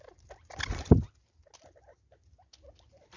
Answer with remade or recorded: recorded